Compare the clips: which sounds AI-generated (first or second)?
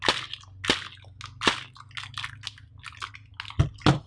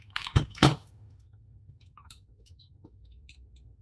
second